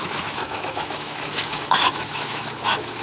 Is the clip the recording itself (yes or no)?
no